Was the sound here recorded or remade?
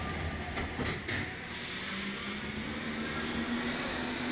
recorded